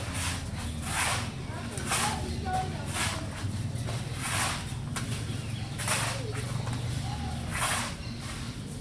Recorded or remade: recorded